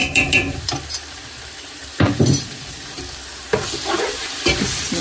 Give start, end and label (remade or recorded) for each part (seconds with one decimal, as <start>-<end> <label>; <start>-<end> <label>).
0.0-3.0 remade; 3.0-5.0 recorded